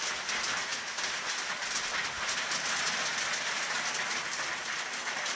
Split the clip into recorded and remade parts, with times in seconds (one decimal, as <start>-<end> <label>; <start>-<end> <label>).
0.0-5.3 recorded